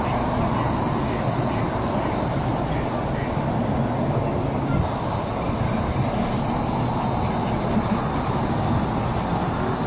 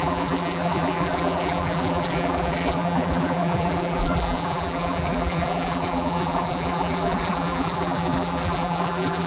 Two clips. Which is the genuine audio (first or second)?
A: first